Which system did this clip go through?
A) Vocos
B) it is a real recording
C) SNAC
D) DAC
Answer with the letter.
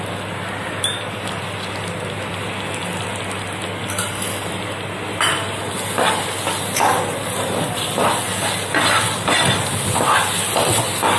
B